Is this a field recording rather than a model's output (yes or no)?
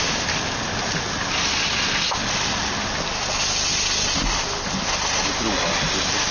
yes